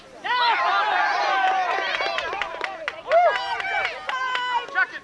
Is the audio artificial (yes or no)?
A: no